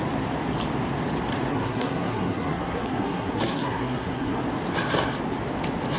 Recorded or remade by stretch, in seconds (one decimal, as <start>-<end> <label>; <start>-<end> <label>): 0.0-1.5 recorded; 1.5-4.4 remade; 4.4-6.0 recorded